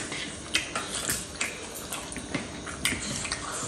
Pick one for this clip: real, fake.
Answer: real